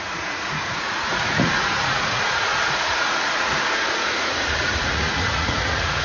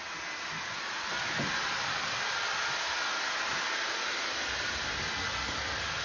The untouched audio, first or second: second